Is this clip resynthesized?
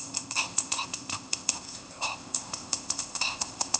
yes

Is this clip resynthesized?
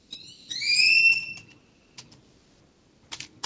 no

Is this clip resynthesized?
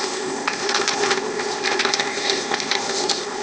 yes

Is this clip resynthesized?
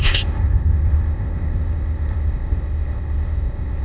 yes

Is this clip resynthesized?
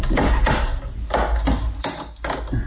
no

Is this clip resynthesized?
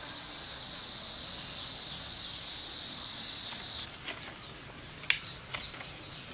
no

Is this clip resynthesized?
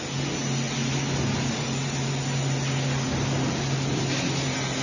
no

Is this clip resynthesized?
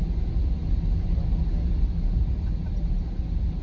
no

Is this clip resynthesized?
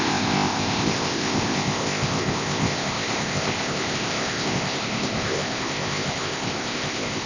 yes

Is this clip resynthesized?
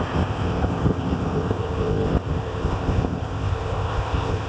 yes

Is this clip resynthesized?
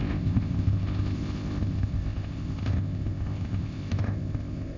yes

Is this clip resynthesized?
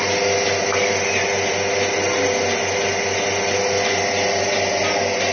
no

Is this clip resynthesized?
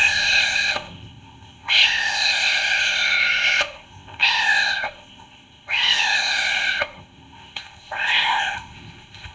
yes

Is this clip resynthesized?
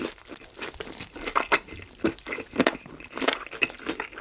no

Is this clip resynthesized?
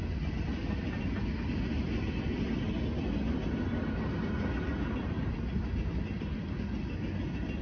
no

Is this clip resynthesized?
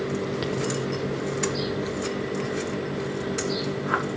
no